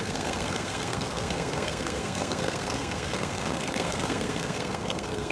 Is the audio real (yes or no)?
no